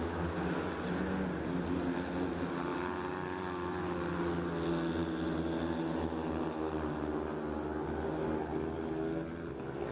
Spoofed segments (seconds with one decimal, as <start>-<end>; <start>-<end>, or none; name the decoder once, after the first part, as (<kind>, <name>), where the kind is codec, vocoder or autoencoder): none